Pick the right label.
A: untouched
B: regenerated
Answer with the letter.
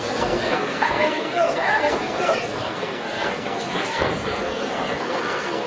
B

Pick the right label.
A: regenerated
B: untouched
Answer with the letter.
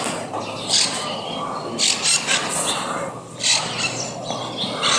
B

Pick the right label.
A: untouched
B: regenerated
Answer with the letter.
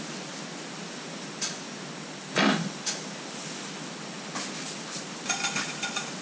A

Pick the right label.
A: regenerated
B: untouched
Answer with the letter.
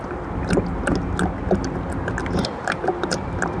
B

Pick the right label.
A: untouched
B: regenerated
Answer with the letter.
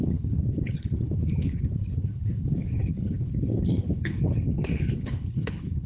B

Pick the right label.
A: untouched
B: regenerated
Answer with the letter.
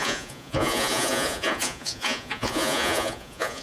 B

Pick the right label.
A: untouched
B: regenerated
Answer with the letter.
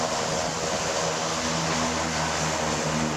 A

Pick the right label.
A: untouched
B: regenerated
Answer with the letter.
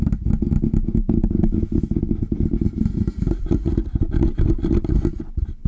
A